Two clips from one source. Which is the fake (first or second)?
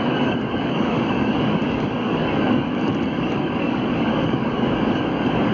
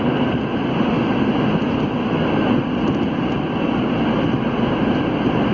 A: first